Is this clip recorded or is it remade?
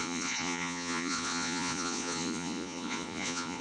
remade